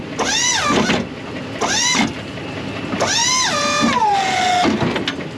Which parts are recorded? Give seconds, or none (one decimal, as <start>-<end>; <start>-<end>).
0.0-5.4